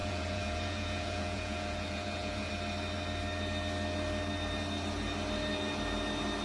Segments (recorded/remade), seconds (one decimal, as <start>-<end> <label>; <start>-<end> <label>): 0.0-2.5 remade; 2.5-6.4 recorded